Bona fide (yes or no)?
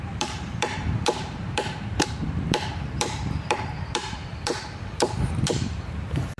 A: no